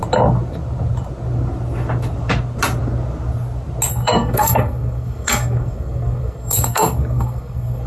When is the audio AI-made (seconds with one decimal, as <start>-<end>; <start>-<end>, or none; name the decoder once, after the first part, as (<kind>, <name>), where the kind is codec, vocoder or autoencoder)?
3.9-7.9 (codec, SNAC)